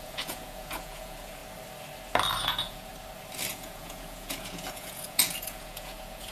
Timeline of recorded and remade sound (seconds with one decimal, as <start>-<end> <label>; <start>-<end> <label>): 0.0-1.4 remade; 1.4-2.4 recorded; 2.4-2.9 remade; 2.9-3.5 recorded; 3.5-6.3 remade